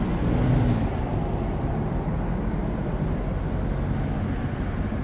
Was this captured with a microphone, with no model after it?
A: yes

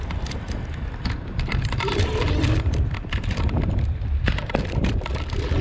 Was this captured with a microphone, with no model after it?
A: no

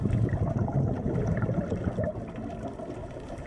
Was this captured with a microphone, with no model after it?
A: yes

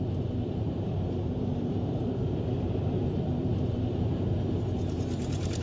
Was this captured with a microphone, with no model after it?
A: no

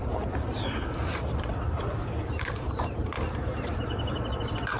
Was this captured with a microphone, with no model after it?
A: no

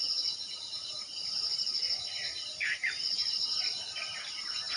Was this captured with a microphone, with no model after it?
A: no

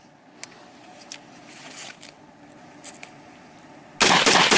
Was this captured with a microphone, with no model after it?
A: yes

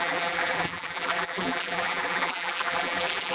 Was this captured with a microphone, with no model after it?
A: no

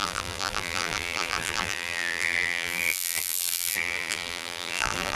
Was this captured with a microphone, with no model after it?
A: no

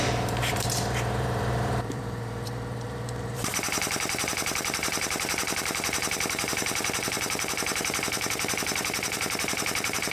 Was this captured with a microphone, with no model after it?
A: no